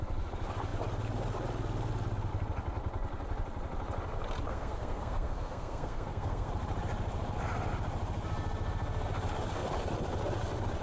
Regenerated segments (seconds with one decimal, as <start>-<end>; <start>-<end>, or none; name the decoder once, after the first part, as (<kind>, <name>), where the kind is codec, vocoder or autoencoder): 4.5-6.5 (codec, SNAC)